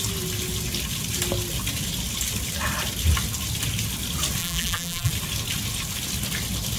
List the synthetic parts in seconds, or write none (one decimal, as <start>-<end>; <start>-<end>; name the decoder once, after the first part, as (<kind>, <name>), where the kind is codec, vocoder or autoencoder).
4.4-5.1 (vocoder, BigVGAN v2)